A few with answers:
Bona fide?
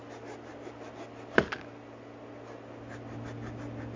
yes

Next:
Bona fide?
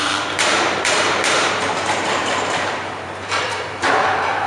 no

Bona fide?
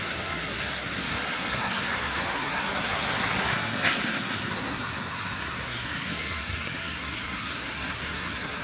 no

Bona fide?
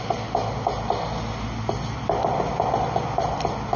yes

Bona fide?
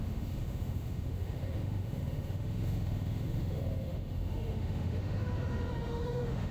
no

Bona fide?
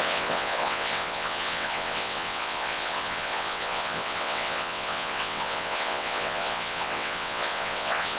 no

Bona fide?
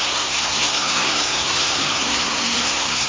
no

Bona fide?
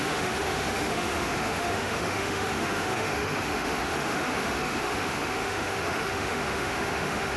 no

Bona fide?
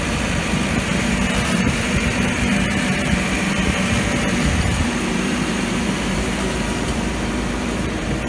no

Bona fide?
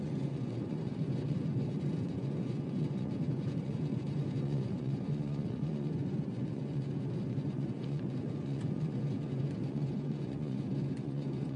no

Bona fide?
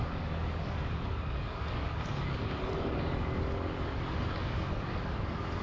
no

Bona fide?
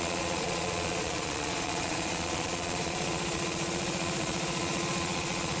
no